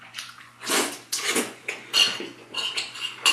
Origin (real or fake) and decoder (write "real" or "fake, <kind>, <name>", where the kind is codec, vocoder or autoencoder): fake, vocoder, Vocos